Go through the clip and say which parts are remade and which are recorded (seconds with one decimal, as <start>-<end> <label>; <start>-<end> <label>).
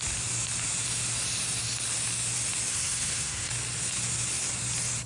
0.0-2.7 recorded; 2.7-3.5 remade; 3.5-5.1 recorded